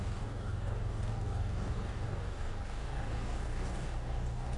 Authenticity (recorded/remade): remade